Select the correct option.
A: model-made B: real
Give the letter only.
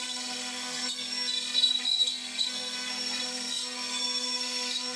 A